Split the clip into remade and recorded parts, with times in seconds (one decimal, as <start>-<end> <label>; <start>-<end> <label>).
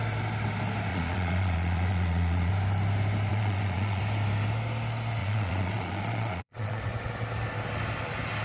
0.0-0.9 recorded; 0.9-2.5 remade; 2.5-3.3 recorded; 3.3-4.0 remade; 4.0-5.2 recorded; 5.2-6.8 remade; 6.8-8.4 recorded